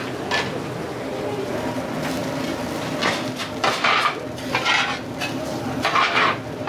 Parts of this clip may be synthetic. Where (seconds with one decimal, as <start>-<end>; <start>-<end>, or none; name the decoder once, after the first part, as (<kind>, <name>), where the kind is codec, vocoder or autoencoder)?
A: none